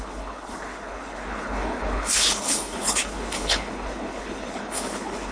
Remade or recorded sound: remade